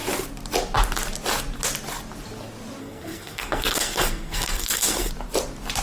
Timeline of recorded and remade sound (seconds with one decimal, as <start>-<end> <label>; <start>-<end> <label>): 0.0-2.8 recorded; 2.8-5.1 remade; 5.1-5.8 recorded